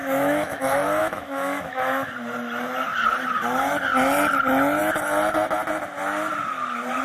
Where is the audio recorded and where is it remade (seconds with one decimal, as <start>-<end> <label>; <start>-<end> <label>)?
0.0-0.6 remade; 0.6-1.0 recorded; 1.0-2.1 remade; 2.1-7.0 recorded